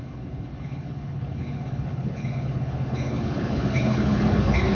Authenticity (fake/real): fake